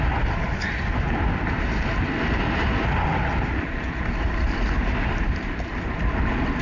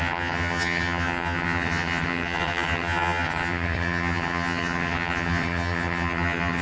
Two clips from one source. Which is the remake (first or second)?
second